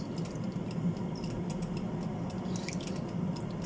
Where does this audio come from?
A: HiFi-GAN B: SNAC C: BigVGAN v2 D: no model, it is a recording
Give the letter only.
D